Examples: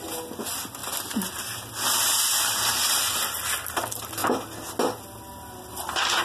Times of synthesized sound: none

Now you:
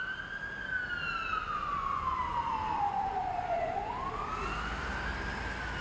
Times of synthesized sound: 1.3-4.0

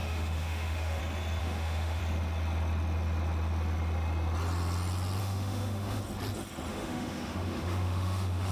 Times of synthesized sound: 0.0-1.0; 1.4-2.0; 5.2-6.0; 6.7-8.5

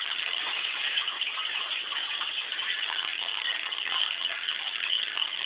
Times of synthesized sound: 0.0-0.4; 2.7-5.5

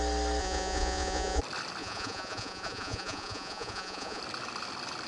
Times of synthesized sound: 0.4-1.4; 1.8-4.2

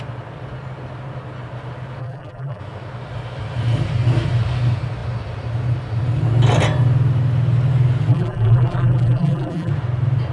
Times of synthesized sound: 2.0-2.6; 8.1-9.7

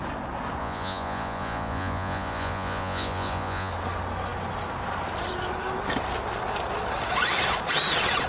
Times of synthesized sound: 0.6-3.7